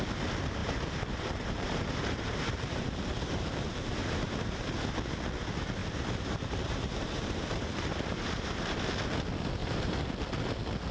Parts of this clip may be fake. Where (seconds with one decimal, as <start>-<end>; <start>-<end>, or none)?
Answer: 0.6-4.5; 5.8-8.8; 9.6-10.1